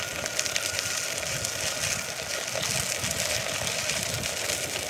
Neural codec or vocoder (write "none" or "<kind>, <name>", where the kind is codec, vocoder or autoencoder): none